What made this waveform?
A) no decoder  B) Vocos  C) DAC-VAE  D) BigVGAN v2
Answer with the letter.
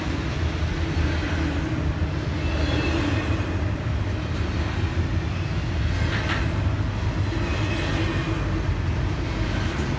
A